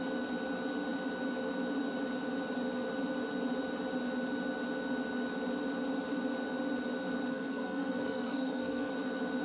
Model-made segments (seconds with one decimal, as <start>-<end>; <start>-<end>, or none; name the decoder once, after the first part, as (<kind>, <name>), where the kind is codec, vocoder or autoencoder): 7.3-8.9 (codec, SNAC)